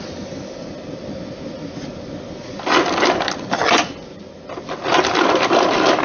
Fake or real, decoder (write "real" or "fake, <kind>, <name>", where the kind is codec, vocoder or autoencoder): real